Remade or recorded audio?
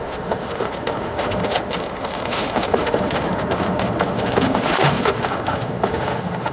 remade